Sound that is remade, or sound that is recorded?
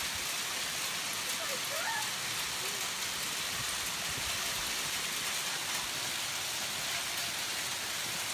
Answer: recorded